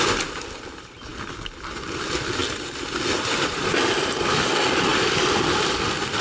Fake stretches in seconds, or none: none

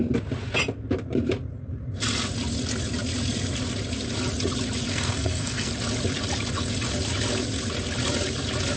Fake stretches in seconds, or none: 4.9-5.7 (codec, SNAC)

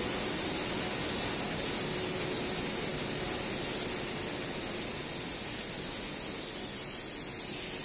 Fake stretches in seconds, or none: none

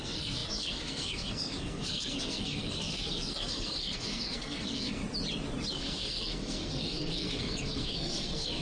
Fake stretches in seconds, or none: 0.0-5.0 (codec, SNAC); 5.7-8.6

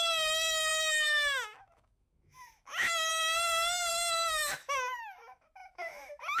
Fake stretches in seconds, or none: 0.0-3.1 (autoencoder, DAC-VAE); 3.9-6.4

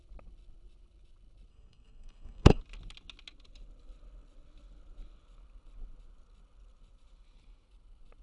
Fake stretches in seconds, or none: 1.5-2.6 (codec, SNAC)

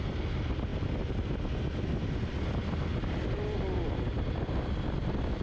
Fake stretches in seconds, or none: none